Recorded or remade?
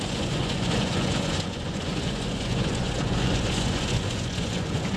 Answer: remade